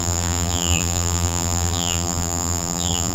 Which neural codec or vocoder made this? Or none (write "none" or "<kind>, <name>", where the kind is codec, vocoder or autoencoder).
vocoder, BigVGAN v2